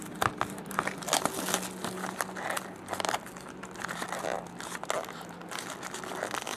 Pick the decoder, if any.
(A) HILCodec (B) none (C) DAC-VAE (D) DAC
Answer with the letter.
B